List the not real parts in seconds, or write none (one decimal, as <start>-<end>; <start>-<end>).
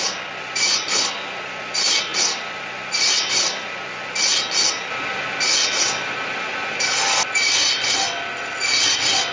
none